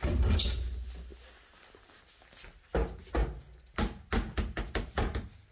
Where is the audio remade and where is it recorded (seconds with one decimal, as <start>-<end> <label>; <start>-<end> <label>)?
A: 0.0-5.5 recorded